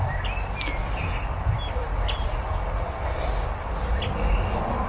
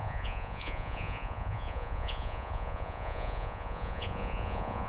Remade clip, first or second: second